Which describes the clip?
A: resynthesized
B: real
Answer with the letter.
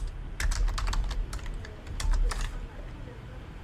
B